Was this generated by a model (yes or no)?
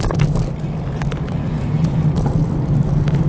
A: yes